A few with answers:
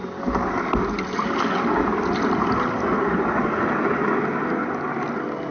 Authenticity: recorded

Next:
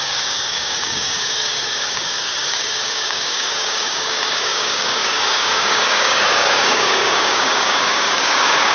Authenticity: remade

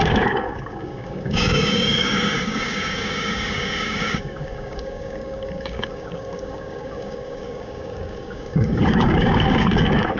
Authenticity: remade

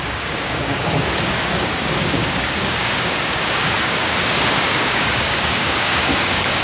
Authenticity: remade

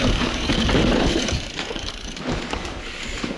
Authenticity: remade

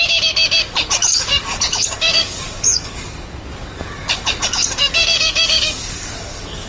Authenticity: remade